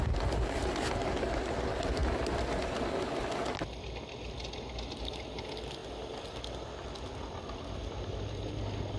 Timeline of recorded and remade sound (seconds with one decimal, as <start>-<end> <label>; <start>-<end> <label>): 0.0-9.0 recorded